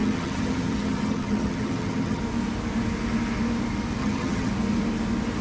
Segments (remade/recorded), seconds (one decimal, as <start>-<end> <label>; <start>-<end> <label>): 0.0-2.2 remade; 2.2-4.0 recorded; 4.0-4.5 remade; 4.5-5.4 recorded